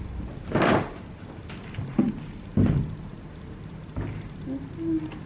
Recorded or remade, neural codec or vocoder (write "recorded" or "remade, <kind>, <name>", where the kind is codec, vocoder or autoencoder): recorded